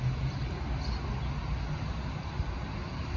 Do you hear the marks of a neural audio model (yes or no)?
no